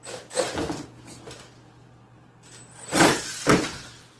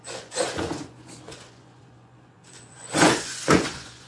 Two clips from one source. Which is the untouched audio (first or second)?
first